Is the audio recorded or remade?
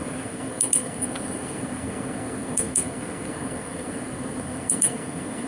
remade